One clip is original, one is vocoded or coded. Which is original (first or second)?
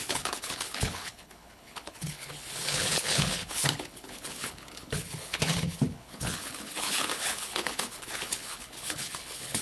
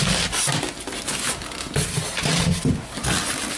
second